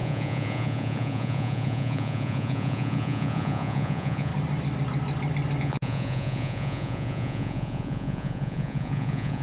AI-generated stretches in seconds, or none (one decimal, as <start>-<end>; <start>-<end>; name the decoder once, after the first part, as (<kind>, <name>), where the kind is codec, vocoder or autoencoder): 0.0-4.3 (vocoder, Vocos); 5.6-9.4